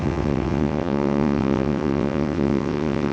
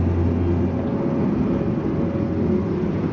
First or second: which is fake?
first